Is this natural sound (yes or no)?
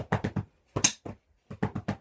yes